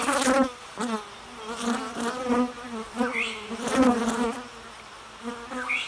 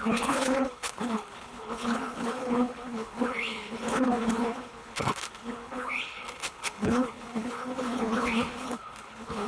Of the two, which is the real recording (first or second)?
first